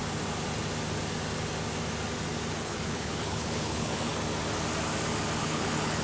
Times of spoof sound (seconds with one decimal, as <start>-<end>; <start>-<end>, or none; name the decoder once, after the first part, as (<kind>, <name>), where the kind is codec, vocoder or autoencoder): 2.5-4.1 (codec, HILCodec); 5.4-6.0